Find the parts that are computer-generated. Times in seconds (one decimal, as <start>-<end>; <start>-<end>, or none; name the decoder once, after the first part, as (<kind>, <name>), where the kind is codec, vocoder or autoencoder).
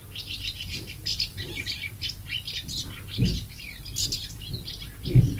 0.0-5.4 (vocoder, BigVGAN v2)